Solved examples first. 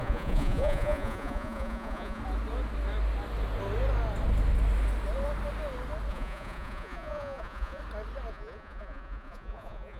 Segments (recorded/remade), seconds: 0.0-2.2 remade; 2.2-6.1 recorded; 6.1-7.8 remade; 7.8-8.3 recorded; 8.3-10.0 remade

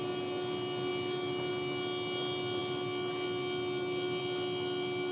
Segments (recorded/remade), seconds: 0.0-5.1 recorded

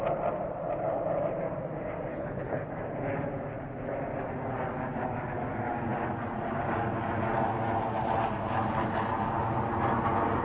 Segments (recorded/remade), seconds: 0.0-2.1 recorded; 2.1-2.7 remade; 2.7-10.4 recorded

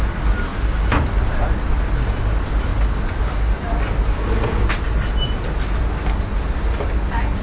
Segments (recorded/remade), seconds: 0.0-7.4 recorded

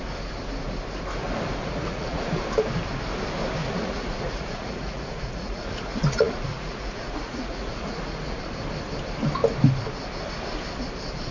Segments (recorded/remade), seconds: 0.0-1.6 recorded; 1.6-2.4 remade; 2.4-3.6 recorded; 3.6-8.4 remade; 8.4-11.3 recorded

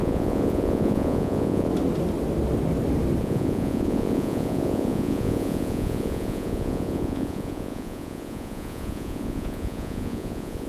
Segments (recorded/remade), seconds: 0.0-1.7 remade; 1.7-3.2 recorded; 3.2-10.7 remade

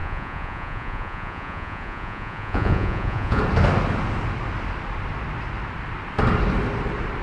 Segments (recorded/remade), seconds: 0.0-3.4 remade; 3.4-7.2 recorded